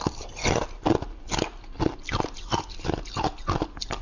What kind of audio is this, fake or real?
real